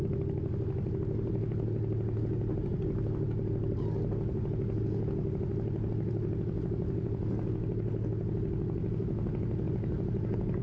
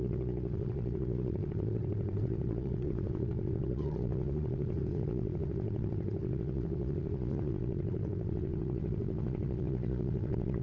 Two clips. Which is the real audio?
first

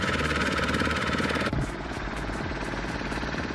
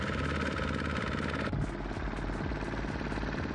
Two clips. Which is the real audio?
second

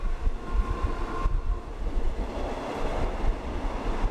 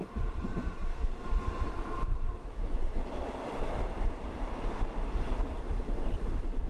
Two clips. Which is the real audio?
first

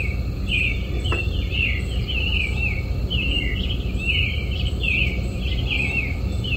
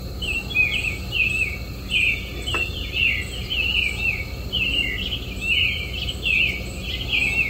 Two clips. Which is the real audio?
second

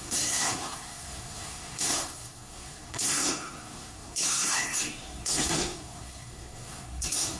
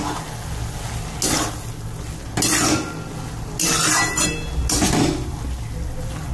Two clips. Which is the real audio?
second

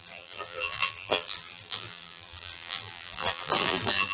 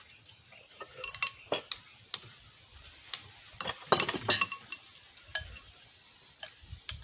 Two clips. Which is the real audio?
second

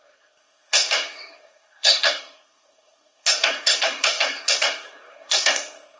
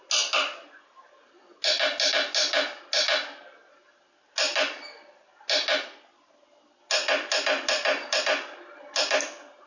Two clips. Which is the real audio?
second